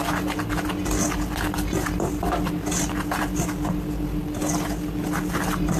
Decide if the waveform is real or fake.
fake